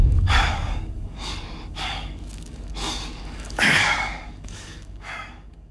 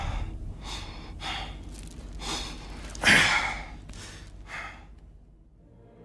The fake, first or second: first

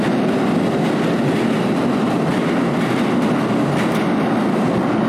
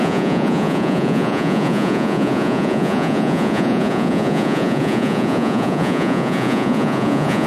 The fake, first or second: second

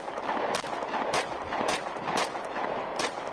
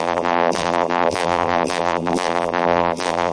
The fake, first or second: second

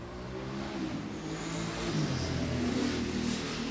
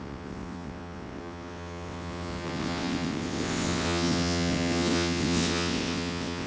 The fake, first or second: second